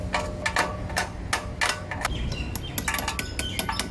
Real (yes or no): yes